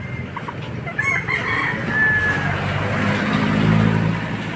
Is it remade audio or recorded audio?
recorded